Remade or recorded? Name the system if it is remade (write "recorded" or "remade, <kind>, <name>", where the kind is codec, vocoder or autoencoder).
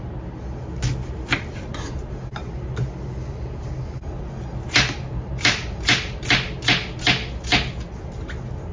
recorded